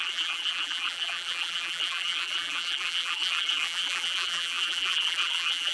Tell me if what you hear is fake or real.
fake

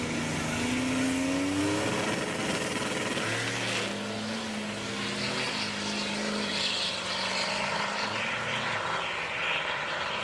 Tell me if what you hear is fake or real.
real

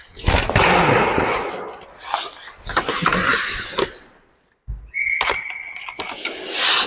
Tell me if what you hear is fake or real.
real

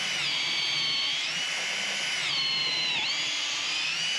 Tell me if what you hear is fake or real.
real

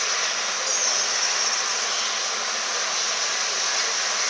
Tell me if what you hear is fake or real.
real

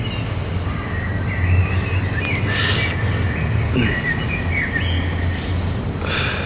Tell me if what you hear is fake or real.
real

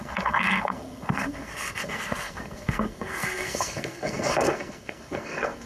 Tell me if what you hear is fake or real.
fake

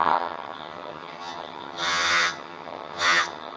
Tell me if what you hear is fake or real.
fake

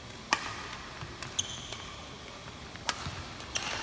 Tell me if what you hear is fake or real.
real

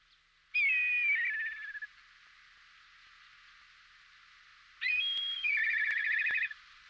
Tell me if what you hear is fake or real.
real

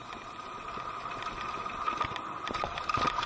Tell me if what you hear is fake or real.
real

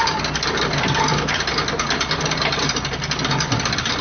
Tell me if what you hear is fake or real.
fake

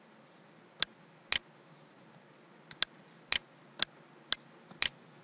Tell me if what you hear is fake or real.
real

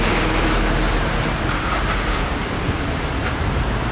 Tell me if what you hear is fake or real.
real